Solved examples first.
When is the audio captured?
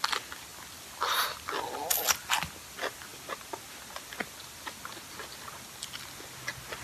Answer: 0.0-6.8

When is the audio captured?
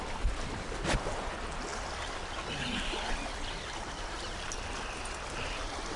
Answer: 0.0-6.0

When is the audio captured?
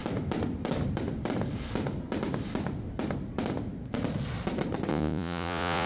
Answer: 0.0-4.9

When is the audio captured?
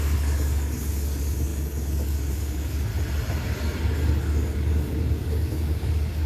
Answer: 2.9-4.2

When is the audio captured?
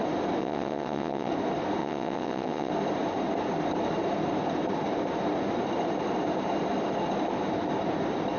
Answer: 0.0-0.4; 1.3-1.8; 2.7-8.4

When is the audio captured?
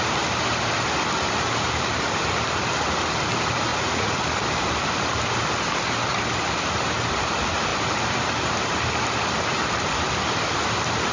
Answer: 0.0-3.7; 4.2-11.1